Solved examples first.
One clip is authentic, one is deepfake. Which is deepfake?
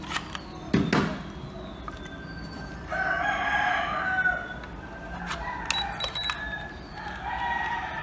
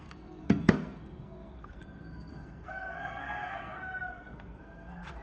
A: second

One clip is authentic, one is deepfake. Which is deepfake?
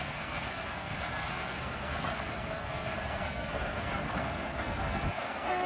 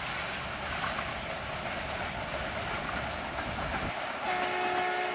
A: first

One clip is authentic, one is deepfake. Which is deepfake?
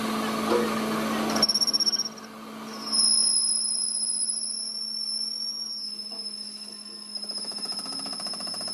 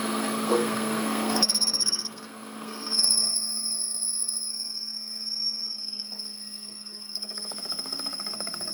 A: second